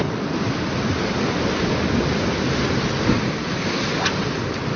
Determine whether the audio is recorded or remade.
recorded